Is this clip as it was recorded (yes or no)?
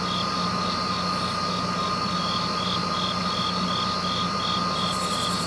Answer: yes